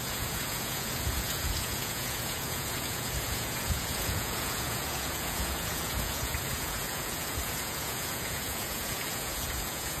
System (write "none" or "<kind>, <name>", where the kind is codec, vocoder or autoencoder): vocoder, Vocos